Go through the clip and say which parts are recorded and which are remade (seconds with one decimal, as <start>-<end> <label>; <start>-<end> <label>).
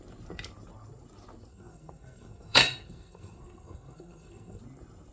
0.0-1.5 recorded; 1.5-4.6 remade; 4.6-5.1 recorded